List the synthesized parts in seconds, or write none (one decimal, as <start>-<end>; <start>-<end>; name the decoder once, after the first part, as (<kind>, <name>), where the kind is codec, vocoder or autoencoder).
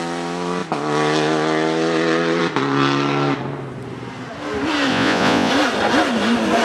4.9-5.5 (vocoder, Vocos)